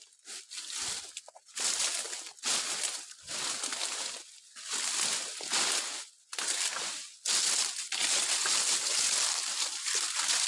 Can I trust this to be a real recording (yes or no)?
yes